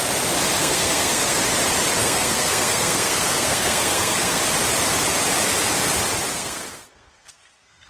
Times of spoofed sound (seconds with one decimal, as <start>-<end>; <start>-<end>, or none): 0.6-1.4; 2.0-4.4; 6.3-7.9